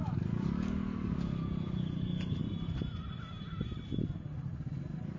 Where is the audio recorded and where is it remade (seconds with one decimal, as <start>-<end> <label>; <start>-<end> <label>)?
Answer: 0.0-2.4 remade; 2.4-5.2 recorded